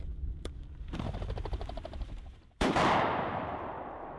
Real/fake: fake